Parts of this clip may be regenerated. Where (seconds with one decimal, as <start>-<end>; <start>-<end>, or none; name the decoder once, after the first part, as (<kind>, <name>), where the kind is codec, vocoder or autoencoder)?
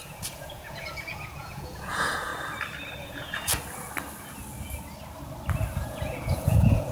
0.0-2.3 (vocoder, Vocos); 3.0-3.5; 5.7-6.9